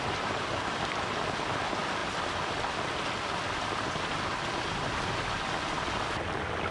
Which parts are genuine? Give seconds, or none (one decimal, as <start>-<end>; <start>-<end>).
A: 0.0-6.7